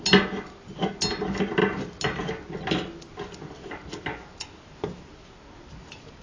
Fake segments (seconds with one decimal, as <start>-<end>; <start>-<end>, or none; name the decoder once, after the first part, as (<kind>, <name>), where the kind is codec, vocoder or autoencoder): none